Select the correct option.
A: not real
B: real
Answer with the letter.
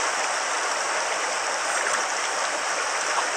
A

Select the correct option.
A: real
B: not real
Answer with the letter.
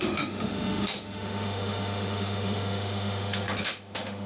B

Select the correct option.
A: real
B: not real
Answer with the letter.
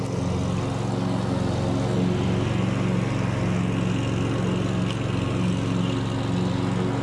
A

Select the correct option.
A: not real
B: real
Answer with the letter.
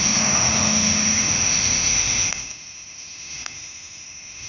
A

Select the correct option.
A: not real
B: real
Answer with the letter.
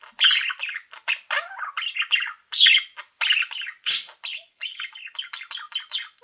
B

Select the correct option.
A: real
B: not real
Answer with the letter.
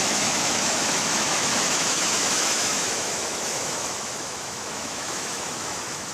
B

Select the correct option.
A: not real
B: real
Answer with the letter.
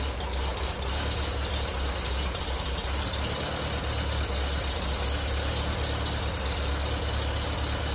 B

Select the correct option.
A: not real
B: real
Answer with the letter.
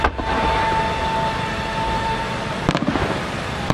B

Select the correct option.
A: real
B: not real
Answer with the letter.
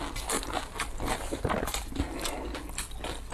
A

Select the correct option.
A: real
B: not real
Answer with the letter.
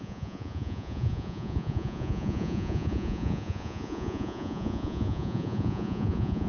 B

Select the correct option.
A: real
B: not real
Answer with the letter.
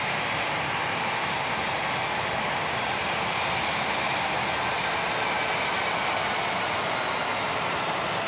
A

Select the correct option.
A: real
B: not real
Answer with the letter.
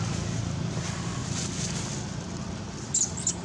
A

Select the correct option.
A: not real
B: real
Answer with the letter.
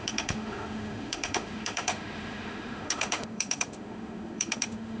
A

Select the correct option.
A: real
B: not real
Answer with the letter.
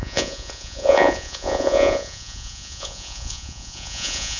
B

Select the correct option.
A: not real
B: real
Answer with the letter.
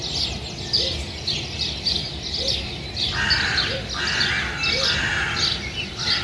B